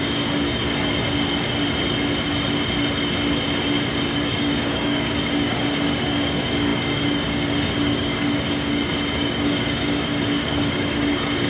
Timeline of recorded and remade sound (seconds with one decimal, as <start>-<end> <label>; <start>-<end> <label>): 0.0-0.6 remade; 0.6-4.0 recorded; 4.0-11.5 remade